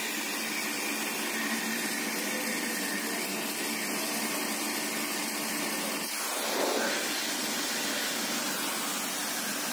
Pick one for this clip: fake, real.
real